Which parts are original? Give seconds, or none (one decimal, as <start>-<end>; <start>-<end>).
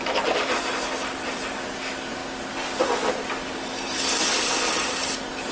0.0-5.5